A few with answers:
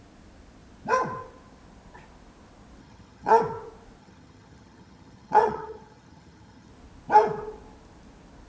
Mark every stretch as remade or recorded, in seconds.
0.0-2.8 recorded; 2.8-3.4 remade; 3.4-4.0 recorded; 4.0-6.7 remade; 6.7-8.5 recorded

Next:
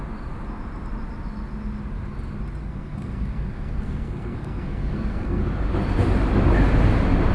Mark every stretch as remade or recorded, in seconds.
0.0-2.6 recorded; 2.6-5.4 remade; 5.4-7.3 recorded

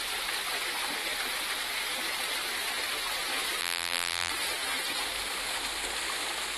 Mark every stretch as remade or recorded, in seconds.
0.0-3.6 recorded; 3.6-4.3 remade; 4.3-6.6 recorded

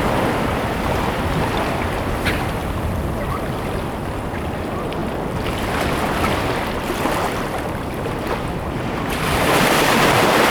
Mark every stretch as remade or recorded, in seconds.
0.0-2.6 remade; 2.6-3.2 recorded; 3.2-5.0 remade; 5.0-6.7 recorded; 6.7-10.5 remade

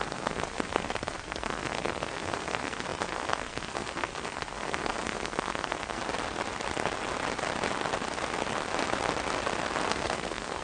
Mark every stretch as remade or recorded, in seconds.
0.0-6.0 remade; 6.0-9.9 recorded; 9.9-10.6 remade

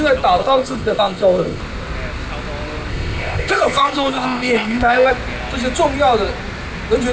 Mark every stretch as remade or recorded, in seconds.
0.0-0.4 recorded; 0.4-1.6 remade; 1.6-2.9 recorded; 2.9-5.1 remade; 5.1-7.1 recorded

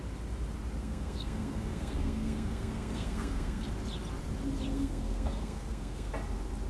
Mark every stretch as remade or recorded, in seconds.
0.0-0.8 recorded; 0.8-3.7 remade; 3.7-4.7 recorded; 4.7-6.1 remade; 6.1-6.7 recorded